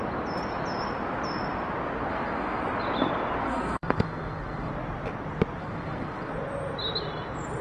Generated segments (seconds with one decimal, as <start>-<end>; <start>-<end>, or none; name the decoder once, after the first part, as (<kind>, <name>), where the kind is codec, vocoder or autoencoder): 2.1-2.6 (codec, SNAC); 3.4-4.7; 5.6-6.3